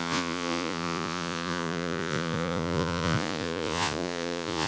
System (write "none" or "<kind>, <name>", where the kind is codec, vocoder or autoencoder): vocoder, Vocos